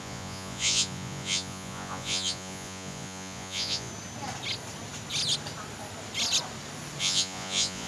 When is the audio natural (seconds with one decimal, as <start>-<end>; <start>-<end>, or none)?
3.9-7.0